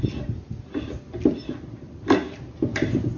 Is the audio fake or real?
real